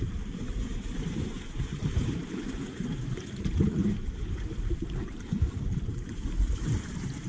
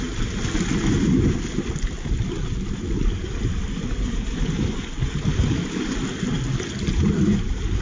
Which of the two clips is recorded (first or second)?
second